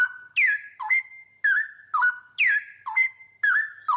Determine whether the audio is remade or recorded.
recorded